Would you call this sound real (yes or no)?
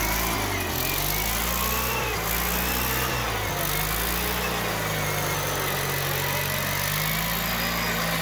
yes